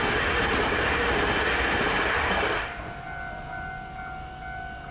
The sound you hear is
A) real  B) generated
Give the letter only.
A